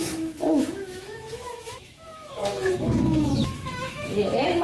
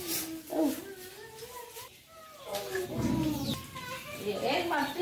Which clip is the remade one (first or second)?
first